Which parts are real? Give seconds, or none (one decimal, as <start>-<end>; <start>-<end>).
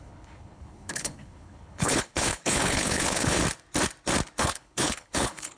3.4-4.4